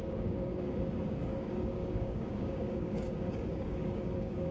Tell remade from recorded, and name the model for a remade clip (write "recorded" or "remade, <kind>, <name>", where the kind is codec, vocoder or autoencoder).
remade, codec, DAC